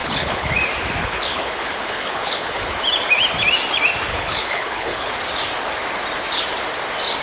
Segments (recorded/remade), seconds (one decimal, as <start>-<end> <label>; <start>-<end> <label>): 0.0-0.5 remade; 0.5-1.0 recorded; 1.0-2.6 remade; 2.6-4.1 recorded; 4.1-5.1 remade; 5.1-7.2 recorded